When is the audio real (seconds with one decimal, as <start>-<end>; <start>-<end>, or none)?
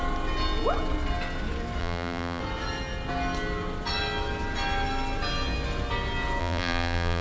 0.0-1.8; 2.4-6.4